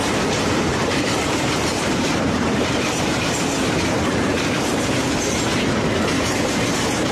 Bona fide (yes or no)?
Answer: no